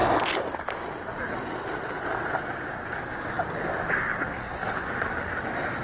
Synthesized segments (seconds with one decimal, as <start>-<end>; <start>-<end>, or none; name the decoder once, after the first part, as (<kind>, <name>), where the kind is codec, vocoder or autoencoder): 0.0-3.5 (vocoder, BigVGAN v2); 4.1-4.7